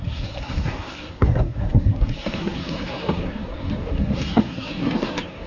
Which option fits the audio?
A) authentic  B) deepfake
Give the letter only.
B